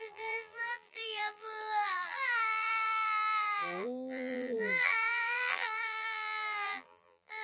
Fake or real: fake